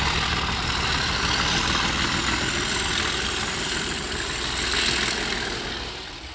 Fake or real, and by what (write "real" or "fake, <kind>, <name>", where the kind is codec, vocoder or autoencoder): real